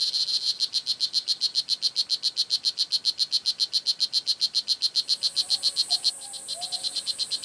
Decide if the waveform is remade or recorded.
recorded